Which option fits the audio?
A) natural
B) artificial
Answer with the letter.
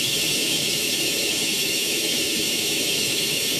B